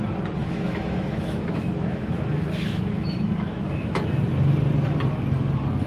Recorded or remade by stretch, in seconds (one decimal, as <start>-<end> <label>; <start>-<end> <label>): 0.0-0.4 recorded; 0.4-3.9 remade; 3.9-5.9 recorded